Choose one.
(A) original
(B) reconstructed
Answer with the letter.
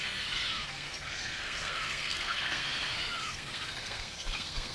B